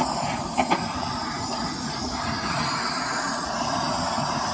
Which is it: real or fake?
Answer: real